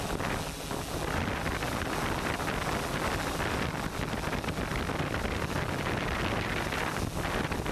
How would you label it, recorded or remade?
recorded